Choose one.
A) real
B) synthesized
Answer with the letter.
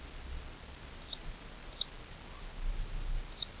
A